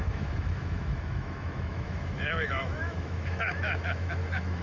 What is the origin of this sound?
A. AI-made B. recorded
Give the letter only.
A